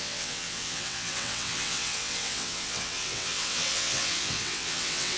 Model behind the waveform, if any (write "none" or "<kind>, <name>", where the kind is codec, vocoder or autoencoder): vocoder, WaveNeXt